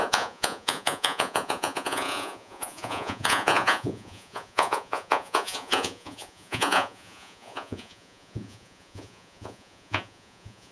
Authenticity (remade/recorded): remade